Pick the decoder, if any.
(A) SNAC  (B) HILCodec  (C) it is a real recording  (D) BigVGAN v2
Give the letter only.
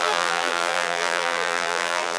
D